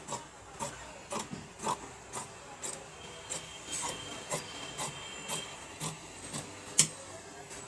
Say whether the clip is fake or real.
real